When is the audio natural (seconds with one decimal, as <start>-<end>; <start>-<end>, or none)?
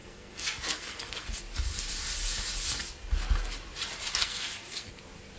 1.4-4.1; 5.0-5.4